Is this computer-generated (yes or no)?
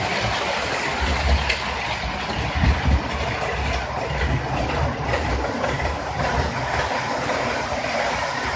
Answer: no